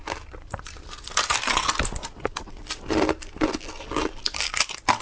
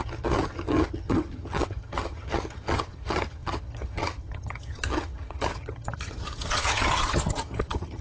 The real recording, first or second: first